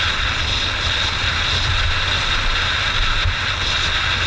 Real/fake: real